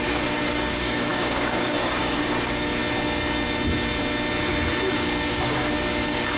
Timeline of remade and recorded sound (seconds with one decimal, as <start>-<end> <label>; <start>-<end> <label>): 0.0-2.8 remade; 2.8-5.3 recorded; 5.3-6.4 remade